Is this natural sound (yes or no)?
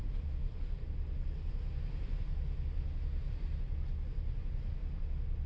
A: yes